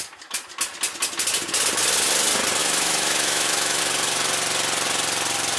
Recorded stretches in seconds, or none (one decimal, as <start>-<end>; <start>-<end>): 0.0-2.6; 3.8-5.6

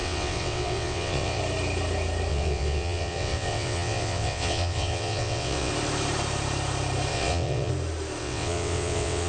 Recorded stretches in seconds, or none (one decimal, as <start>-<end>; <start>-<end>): 1.4-2.3; 5.7-7.1; 7.7-8.2

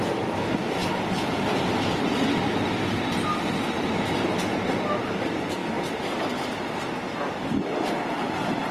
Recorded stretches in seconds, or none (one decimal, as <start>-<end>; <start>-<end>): 0.0-5.6; 6.9-8.7

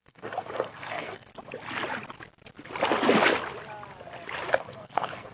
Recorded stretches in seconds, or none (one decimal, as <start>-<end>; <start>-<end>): 1.3-4.5

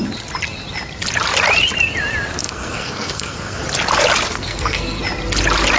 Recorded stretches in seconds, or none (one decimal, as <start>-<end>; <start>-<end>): 0.0-2.4; 3.6-4.3; 5.0-5.8

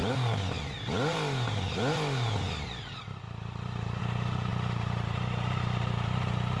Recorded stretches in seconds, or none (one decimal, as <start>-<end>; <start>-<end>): 0.0-6.6

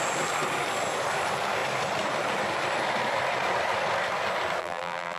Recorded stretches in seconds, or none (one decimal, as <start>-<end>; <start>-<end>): 0.0-4.6

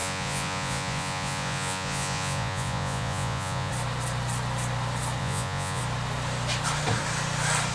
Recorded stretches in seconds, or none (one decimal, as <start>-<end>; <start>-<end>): 3.7-5.2; 5.8-7.7